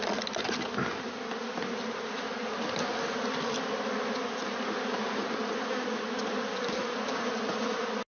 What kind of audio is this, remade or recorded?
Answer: recorded